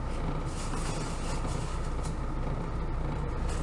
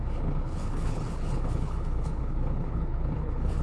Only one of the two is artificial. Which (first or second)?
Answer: second